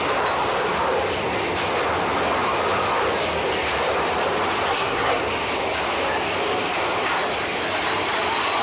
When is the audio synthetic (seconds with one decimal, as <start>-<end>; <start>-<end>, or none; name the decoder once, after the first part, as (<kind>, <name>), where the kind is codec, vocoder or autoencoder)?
4.7-5.2 (codec, SNAC)